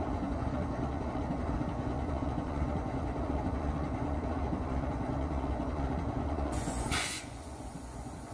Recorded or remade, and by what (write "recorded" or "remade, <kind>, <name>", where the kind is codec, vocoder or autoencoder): remade, vocoder, Vocos